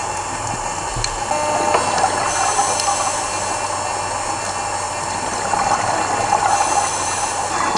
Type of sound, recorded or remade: recorded